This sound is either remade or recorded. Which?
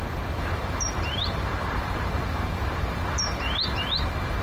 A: remade